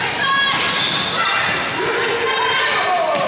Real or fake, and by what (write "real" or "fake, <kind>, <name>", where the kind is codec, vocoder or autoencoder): real